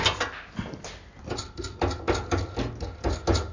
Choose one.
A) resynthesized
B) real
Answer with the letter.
B